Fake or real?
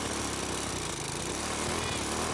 real